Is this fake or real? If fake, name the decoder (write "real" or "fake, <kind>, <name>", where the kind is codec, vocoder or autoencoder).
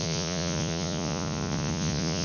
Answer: fake, vocoder, Vocos